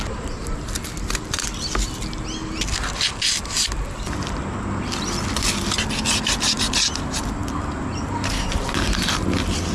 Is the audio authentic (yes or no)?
yes